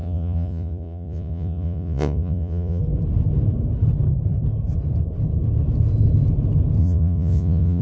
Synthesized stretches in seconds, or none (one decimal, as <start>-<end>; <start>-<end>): 0.0-2.8; 6.8-7.8